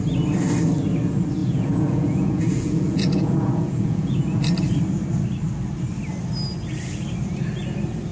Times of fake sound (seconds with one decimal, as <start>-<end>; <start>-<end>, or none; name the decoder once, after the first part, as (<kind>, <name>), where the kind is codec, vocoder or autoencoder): 1.4-4.4 (vocoder, Vocos)